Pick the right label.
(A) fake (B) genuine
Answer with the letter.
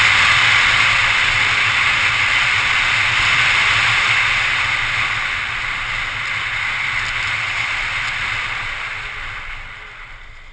B